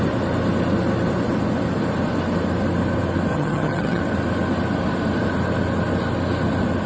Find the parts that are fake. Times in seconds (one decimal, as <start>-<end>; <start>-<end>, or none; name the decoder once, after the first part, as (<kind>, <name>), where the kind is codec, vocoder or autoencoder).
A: 3.3-4.0 (vocoder, HiFi-GAN)